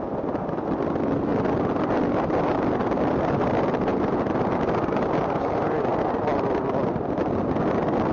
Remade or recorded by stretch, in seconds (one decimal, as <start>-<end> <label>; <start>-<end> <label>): 0.0-8.1 recorded